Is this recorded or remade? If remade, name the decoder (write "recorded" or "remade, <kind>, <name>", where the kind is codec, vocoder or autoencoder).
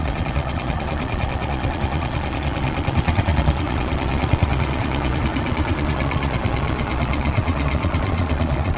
remade, vocoder, Vocos